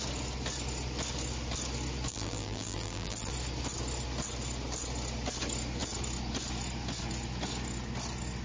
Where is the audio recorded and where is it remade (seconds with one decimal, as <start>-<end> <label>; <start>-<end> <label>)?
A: 0.0-2.1 recorded; 2.1-3.3 remade; 3.3-8.4 recorded